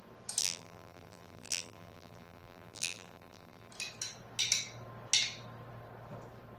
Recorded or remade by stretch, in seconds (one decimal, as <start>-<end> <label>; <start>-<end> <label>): 0.0-0.4 recorded; 0.4-3.7 remade; 3.7-6.6 recorded